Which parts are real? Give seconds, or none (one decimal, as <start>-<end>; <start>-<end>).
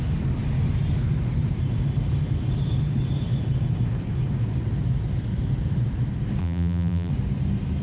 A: 0.0-6.4; 7.1-7.8